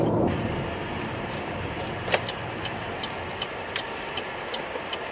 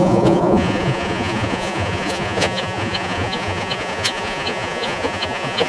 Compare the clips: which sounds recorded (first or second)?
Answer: first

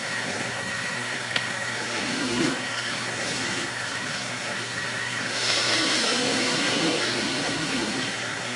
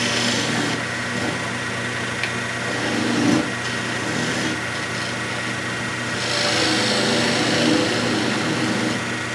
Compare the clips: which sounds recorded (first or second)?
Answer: second